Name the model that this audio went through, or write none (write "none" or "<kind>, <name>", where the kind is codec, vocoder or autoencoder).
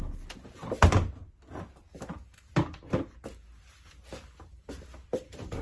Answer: none